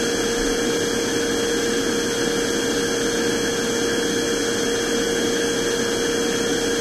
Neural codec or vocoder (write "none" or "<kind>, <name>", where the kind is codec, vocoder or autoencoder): none